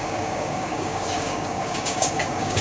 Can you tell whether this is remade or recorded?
remade